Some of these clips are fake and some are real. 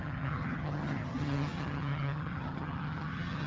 fake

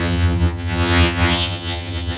fake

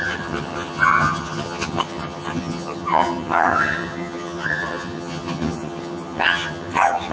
fake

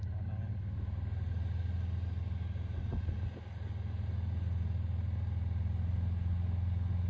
real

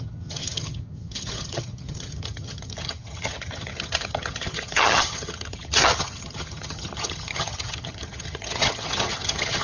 fake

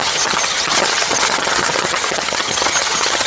fake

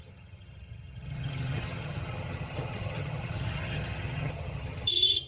fake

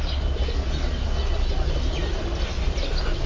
real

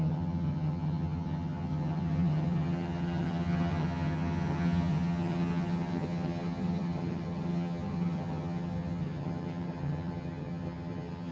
fake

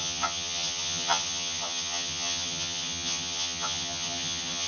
fake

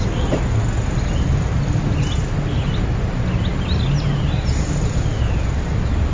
real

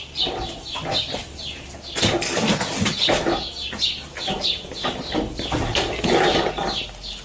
real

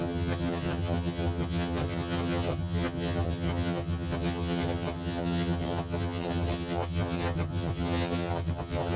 fake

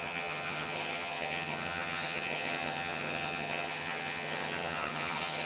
fake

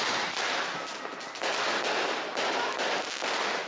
real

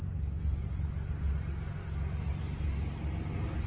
real